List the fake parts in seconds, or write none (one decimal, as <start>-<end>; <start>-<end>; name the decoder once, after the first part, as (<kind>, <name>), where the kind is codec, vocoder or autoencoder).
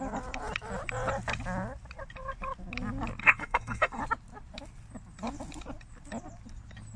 3.2-4.0 (codec, SNAC)